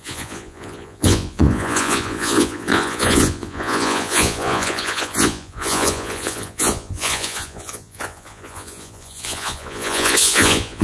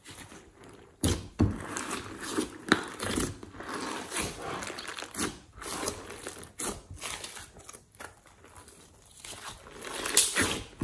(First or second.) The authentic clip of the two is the second